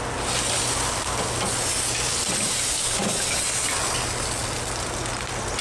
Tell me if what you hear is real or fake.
real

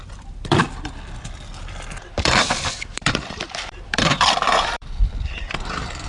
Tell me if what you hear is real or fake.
fake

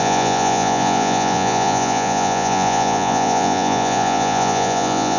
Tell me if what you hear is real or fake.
fake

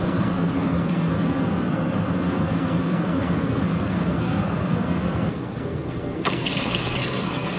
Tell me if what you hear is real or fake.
fake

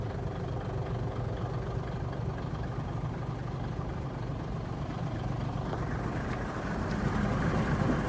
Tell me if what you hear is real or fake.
fake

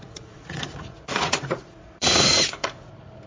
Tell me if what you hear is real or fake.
fake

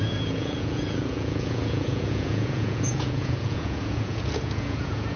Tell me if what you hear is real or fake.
fake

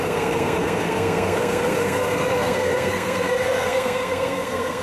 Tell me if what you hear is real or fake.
fake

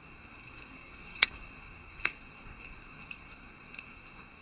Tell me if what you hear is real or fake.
fake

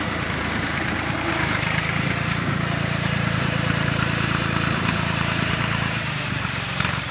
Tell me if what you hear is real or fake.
fake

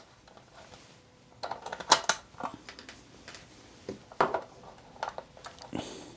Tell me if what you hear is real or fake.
real